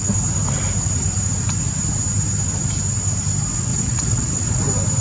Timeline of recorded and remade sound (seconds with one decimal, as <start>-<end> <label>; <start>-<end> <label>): 0.0-3.7 recorded; 3.7-4.6 remade; 4.6-5.0 recorded